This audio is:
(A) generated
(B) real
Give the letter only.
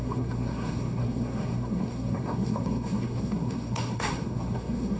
A